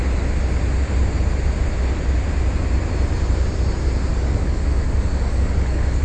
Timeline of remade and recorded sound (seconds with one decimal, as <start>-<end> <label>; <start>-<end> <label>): 0.0-4.1 recorded; 4.1-6.0 remade